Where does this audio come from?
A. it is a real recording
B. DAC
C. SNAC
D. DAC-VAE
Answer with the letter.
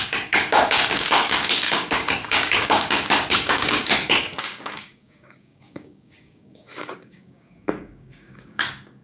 B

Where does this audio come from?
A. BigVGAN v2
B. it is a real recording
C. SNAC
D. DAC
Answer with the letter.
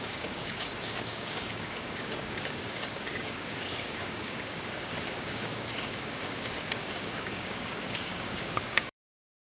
D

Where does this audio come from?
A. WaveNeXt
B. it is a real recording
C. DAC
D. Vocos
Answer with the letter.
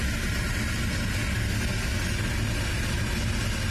B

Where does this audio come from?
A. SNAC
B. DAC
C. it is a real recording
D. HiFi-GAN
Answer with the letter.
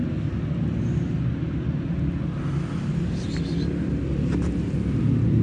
C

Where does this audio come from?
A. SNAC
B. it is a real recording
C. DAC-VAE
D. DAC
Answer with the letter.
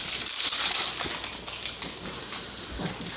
B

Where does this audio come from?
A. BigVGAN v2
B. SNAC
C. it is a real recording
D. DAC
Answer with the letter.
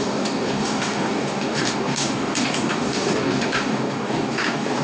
D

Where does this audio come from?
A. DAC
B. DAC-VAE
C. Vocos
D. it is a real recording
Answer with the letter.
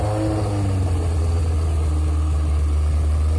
D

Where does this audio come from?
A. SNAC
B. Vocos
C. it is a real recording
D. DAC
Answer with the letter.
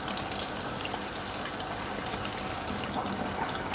C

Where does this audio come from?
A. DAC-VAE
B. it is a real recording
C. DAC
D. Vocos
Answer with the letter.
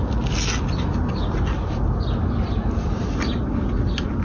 B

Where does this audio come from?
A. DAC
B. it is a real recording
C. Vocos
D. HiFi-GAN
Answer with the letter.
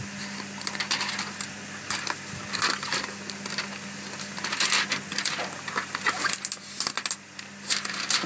B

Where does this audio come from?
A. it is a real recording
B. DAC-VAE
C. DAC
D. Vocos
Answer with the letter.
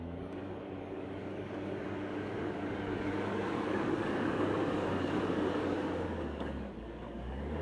C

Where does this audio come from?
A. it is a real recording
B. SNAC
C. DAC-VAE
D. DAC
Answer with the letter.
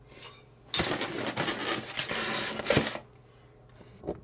A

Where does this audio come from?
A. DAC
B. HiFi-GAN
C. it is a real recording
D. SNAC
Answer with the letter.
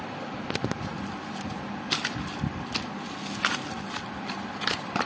C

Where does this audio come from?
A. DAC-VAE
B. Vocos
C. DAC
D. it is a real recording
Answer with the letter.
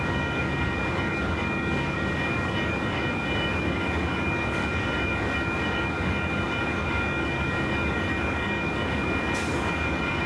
C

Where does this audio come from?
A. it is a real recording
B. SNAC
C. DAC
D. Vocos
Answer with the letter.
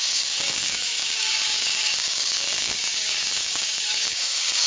C